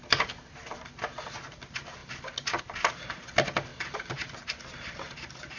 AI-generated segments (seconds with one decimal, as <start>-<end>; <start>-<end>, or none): none